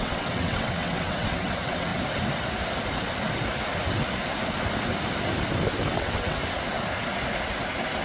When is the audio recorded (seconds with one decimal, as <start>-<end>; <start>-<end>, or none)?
1.9-5.9; 6.4-8.0